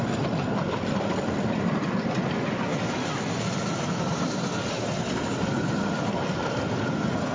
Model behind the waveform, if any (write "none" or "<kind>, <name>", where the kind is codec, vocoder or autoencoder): none